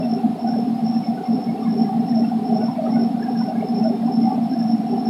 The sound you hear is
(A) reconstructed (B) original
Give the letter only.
B